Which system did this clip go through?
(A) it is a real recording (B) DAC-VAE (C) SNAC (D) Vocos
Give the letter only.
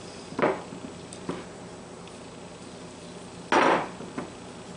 A